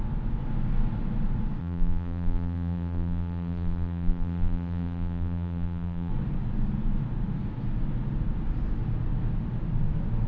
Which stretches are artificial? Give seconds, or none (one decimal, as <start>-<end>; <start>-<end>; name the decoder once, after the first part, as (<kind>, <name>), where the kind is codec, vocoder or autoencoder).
1.6-6.1 (vocoder, BigVGAN v2)